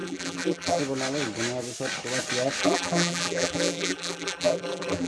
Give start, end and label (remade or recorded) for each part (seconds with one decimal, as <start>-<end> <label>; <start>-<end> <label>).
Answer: 0.0-0.8 remade; 0.8-2.6 recorded; 2.6-5.1 remade